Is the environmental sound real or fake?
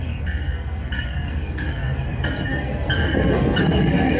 fake